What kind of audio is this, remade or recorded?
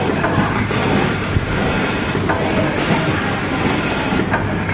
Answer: recorded